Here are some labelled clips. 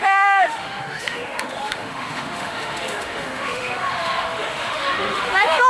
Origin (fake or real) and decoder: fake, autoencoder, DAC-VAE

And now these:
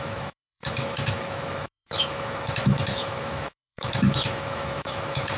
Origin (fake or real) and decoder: fake, autoencoder, DAC-VAE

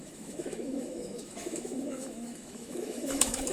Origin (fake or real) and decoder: fake, autoencoder, DAC-VAE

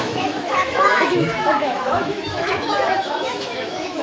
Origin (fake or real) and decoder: fake, autoencoder, DAC-VAE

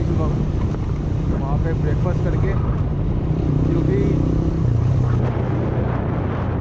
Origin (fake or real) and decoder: real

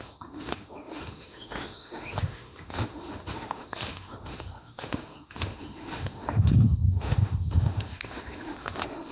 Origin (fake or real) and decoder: fake, autoencoder, DAC-VAE